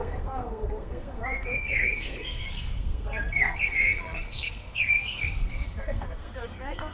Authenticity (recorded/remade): remade